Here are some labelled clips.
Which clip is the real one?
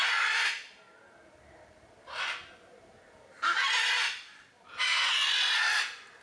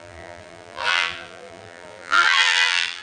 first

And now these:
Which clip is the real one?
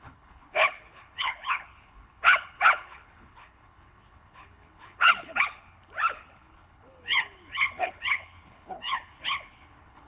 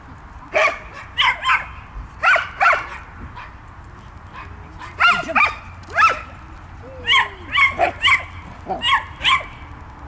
second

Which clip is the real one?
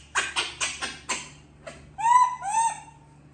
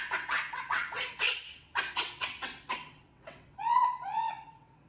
first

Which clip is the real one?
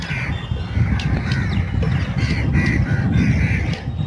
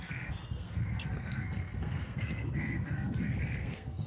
first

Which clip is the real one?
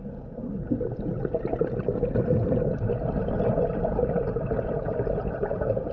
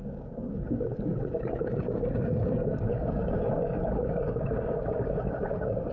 first